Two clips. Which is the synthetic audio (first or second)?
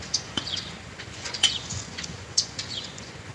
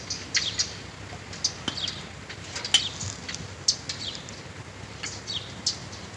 first